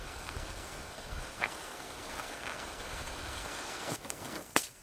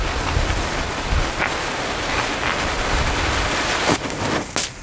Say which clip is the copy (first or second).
first